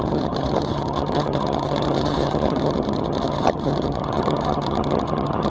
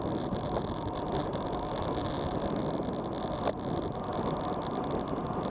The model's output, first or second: first